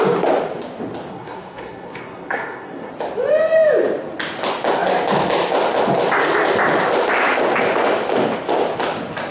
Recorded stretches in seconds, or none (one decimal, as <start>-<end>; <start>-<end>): 0.0-1.1; 2.9-9.3